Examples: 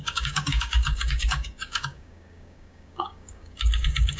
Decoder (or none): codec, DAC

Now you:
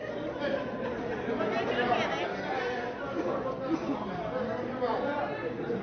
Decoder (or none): none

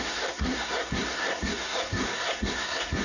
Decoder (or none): codec, SNAC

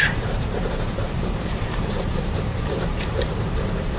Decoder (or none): vocoder, BigVGAN v2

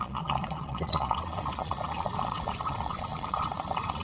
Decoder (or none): vocoder, Vocos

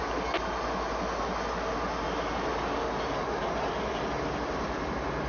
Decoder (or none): none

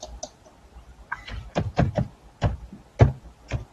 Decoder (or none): none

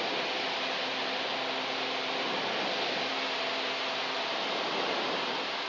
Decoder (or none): none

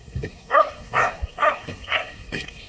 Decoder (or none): codec, SNAC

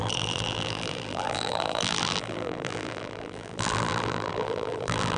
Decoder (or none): vocoder, BigVGAN v2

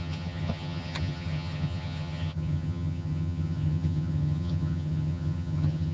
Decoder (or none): vocoder, HiFi-GAN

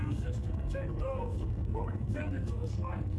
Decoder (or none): codec, SNAC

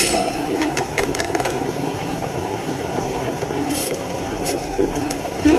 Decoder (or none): codec, SNAC